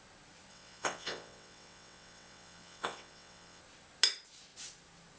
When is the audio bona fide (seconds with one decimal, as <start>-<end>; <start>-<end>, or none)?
0.0-0.5; 3.6-5.2